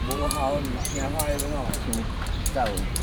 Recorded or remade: recorded